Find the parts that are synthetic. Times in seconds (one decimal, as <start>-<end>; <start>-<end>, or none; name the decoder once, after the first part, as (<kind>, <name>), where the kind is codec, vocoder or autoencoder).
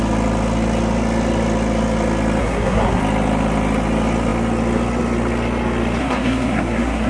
2.4-3.0 (codec, SNAC); 6.0-7.1